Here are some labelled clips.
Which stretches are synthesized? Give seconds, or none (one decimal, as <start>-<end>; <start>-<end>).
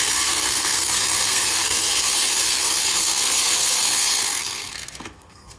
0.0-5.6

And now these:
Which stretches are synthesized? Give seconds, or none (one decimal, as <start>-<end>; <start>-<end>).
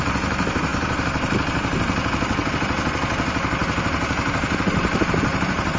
none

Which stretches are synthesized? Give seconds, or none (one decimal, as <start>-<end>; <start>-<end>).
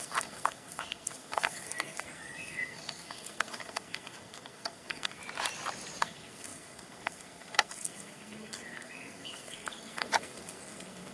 0.0-5.2; 6.0-11.1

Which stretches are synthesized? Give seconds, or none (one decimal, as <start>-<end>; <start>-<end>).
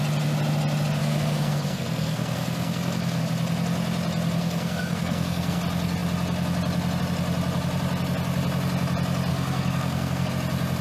1.0-3.2; 4.4-5.6; 9.3-10.3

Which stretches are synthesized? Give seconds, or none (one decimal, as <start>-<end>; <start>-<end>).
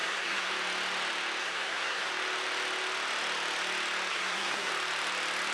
0.0-0.5; 1.4-2.1; 4.1-4.7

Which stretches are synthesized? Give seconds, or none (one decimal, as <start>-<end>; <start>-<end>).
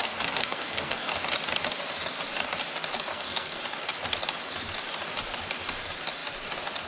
0.0-1.1; 3.1-3.6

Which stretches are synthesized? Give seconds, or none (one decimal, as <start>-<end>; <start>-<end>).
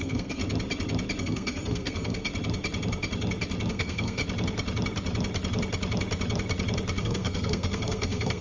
0.0-0.4; 1.2-2.3; 3.7-4.2; 7.0-8.4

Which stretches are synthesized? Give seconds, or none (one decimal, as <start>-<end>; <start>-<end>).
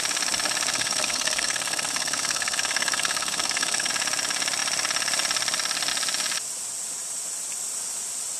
0.7-3.9